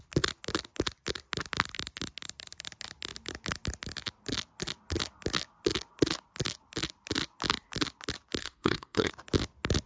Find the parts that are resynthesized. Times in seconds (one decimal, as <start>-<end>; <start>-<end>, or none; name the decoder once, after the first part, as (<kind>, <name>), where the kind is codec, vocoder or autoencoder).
8.4-9.1 (codec, SNAC)